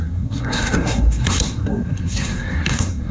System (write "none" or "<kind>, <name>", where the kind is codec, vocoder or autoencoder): codec, SNAC